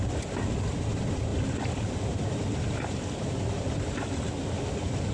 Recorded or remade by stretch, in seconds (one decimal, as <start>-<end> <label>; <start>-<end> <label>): 0.0-1.3 recorded; 1.3-3.8 remade; 3.8-5.1 recorded